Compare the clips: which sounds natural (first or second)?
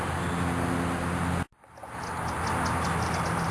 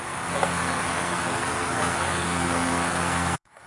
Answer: first